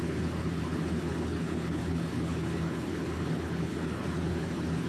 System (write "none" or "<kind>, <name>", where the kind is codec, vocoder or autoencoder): codec, HILCodec